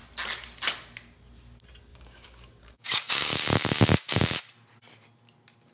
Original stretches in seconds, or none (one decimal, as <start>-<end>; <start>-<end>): 0.0-1.9; 4.4-5.7